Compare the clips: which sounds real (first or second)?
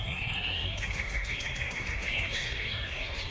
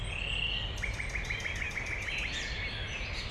second